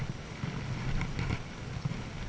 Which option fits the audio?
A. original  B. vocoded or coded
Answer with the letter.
A